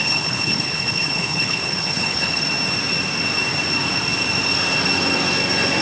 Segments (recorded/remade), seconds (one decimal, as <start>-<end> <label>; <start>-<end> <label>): 0.0-2.4 remade; 2.4-5.8 recorded